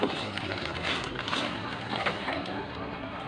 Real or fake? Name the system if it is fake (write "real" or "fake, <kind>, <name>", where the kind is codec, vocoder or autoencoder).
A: fake, codec, SNAC